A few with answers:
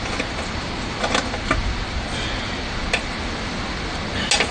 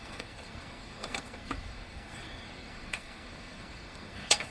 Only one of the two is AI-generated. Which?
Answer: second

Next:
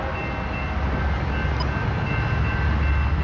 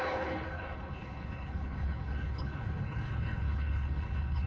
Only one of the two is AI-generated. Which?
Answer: second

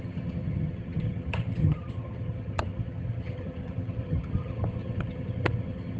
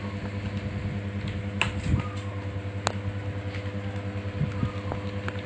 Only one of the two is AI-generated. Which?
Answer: first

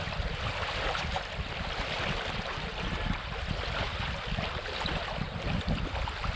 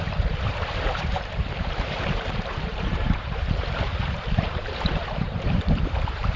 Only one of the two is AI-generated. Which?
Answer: second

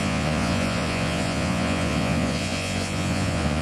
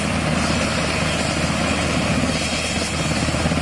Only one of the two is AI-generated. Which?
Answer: first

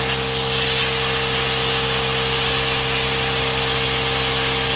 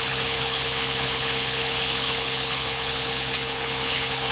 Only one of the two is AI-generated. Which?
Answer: second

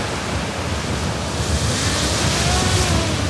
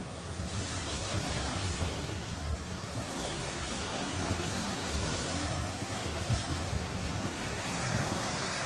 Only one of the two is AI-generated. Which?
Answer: second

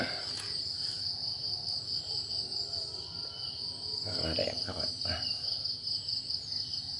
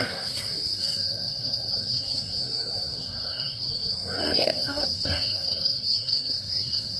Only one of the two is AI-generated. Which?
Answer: second